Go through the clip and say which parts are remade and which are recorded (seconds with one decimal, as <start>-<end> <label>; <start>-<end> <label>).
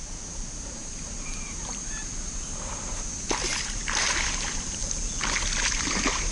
0.0-4.8 remade; 4.8-5.7 recorded; 5.7-6.3 remade